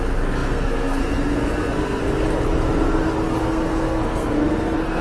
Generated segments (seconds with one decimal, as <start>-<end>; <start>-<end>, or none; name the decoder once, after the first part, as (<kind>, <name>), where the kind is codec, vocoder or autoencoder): 0.0-2.0 (codec, SNAC); 3.4-5.0

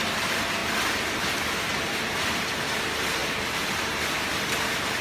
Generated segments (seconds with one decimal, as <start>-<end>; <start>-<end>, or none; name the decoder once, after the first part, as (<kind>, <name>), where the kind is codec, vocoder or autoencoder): 1.7-2.8 (vocoder, BigVGAN v2); 3.2-3.9

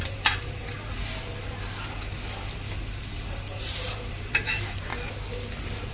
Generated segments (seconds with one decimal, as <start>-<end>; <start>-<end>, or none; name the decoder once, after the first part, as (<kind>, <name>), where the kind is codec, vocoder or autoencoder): 0.0-1.0 (vocoder, BigVGAN v2); 3.0-4.9